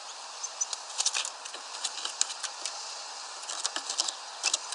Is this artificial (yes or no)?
no